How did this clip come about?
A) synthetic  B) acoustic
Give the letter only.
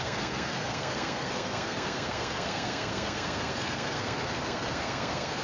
A